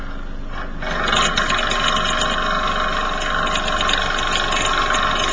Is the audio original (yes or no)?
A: yes